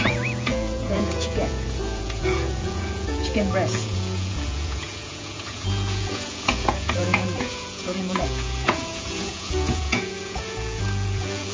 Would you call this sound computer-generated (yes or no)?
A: yes